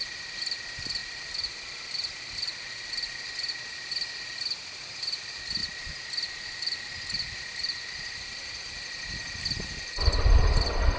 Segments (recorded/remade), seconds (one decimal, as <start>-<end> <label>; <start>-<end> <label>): 0.0-11.0 recorded